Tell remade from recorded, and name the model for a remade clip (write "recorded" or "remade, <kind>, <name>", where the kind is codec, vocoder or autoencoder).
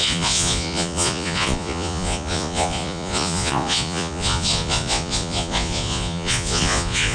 remade, vocoder, Vocos